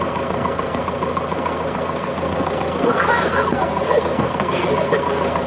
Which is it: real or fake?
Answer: fake